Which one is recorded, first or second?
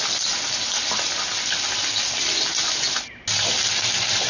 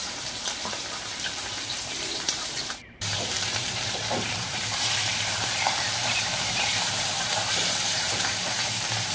first